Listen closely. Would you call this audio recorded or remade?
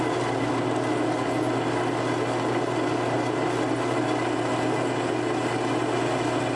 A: recorded